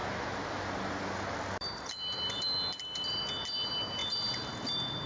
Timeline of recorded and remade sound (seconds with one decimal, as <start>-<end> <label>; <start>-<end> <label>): 0.0-5.1 recorded